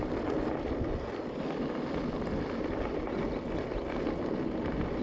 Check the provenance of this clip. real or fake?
real